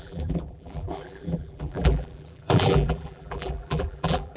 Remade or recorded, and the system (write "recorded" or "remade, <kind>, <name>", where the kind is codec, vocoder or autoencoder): remade, vocoder, BigVGAN v2